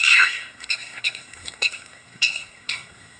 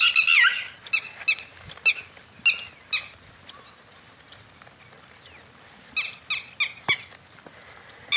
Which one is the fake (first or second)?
first